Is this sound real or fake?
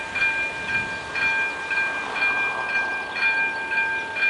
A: real